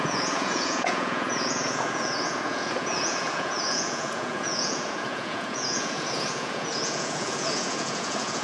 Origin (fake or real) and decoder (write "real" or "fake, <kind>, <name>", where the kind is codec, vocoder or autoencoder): fake, vocoder, Vocos